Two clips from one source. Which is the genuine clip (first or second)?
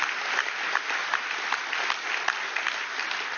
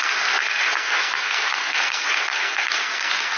first